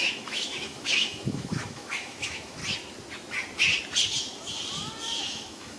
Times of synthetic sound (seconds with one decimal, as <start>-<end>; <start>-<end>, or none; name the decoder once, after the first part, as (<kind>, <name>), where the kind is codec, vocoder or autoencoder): 0.0-2.6 (autoencoder, DAC-VAE); 5.2-5.8